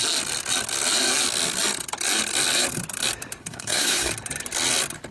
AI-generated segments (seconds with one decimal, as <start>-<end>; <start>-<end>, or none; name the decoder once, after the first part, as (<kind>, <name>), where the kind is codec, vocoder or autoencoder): 3.4-4.1 (codec, SNAC)